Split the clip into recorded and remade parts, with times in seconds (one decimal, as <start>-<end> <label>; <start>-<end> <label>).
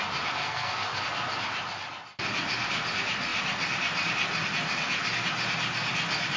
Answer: 0.0-0.4 recorded; 0.4-1.0 remade; 1.0-6.4 recorded